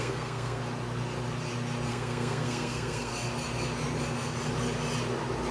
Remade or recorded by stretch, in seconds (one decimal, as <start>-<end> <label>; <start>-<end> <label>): 0.0-0.6 remade; 0.6-1.9 recorded; 1.9-3.1 remade; 3.1-5.5 recorded